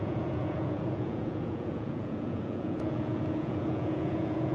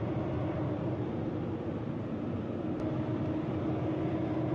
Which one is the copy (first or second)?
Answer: first